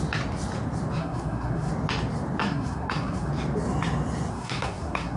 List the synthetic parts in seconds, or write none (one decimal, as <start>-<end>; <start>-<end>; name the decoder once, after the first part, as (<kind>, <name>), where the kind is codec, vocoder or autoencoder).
1.0-1.7 (codec, SNAC); 2.4-3.3; 4.3-5.2